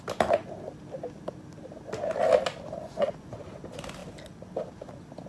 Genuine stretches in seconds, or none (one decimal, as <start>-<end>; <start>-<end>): 0.0-2.8; 3.4-5.3